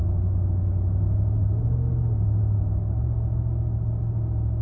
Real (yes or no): yes